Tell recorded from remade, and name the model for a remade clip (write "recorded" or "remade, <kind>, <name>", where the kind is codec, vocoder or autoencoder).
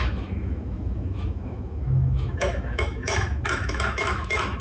remade, autoencoder, DAC-VAE